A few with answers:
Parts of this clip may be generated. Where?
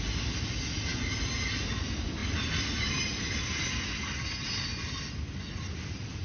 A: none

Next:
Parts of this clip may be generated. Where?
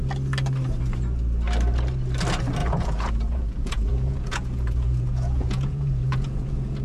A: 2.6-6.8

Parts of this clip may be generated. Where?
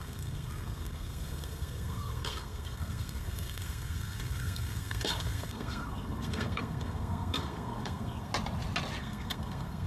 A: 0.0-8.3; 9.0-9.9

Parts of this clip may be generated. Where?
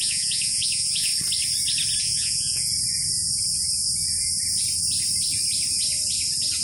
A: 0.0-1.1; 2.0-2.7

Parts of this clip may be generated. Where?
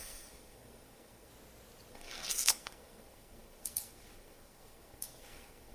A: 0.0-1.3; 1.9-5.7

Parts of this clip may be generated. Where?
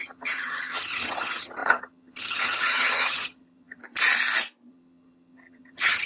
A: 0.0-3.8; 4.7-6.1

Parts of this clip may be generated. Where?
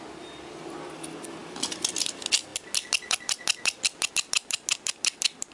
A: none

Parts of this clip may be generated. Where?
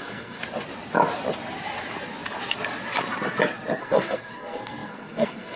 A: 0.0-0.4; 3.8-5.6